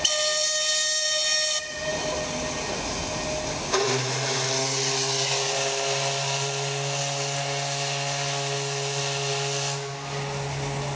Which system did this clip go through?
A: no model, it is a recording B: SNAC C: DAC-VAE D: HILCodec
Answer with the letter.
A